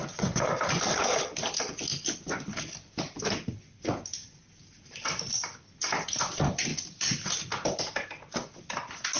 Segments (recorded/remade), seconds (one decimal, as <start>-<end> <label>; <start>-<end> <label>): 0.0-0.6 remade; 0.6-9.2 recorded